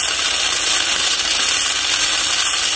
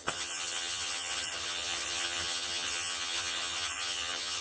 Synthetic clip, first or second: second